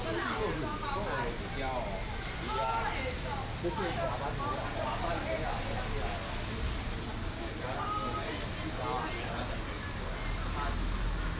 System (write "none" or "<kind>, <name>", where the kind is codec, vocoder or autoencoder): none